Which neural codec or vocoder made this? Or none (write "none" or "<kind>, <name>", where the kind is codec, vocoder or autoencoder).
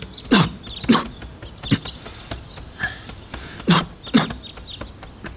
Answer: none